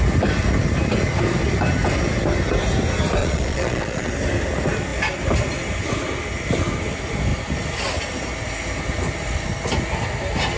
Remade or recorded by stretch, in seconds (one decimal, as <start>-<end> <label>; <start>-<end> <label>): 0.0-3.2 recorded; 3.2-4.1 remade; 4.1-10.6 recorded